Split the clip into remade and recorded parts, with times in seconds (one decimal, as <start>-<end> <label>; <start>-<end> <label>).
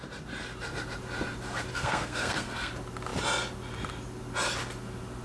0.0-1.7 recorded; 1.7-2.7 remade; 2.7-5.2 recorded